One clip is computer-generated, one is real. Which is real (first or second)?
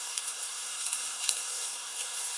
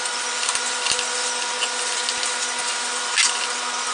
second